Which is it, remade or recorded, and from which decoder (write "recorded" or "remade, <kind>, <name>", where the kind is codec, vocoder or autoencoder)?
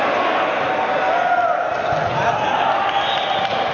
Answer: recorded